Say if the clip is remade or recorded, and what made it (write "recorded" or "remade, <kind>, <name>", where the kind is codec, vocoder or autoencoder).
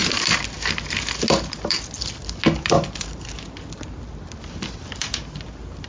recorded